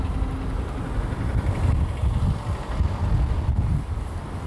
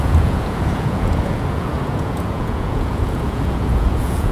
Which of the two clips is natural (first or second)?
first